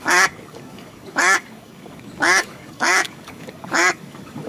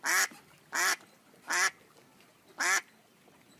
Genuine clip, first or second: second